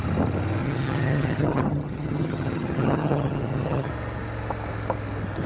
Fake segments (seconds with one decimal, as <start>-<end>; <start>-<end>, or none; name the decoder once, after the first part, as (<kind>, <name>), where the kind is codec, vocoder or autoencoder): 0.6-3.9 (vocoder, HiFi-GAN)